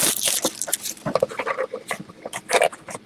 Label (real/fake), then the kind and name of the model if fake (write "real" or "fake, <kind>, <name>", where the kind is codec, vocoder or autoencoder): fake, vocoder, BigVGAN v2